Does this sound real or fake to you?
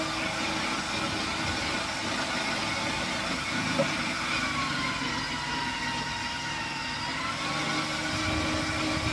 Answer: real